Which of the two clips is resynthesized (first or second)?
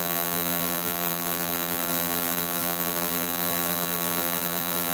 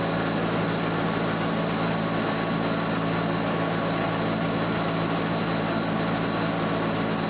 first